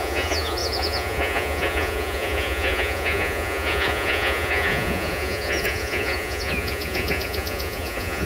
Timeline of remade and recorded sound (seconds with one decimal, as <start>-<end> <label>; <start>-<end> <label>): 0.0-8.3 remade